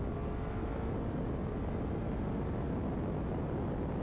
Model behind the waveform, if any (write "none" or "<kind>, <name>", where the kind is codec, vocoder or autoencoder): none